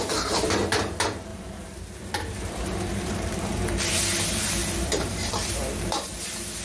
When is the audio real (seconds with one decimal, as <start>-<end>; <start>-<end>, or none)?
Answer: 0.0-1.3; 3.9-4.6; 6.0-6.6